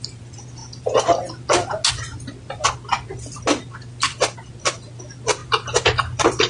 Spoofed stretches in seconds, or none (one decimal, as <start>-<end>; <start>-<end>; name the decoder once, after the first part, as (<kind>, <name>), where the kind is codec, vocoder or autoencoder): none